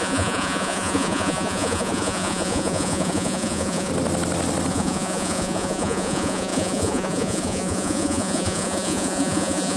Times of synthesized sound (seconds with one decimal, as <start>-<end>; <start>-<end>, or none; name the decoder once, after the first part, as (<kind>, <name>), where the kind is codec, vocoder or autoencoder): 0.0-3.9 (vocoder, Vocos); 4.7-9.8